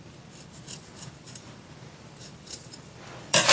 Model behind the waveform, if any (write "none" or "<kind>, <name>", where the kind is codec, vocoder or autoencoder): vocoder, BigVGAN v2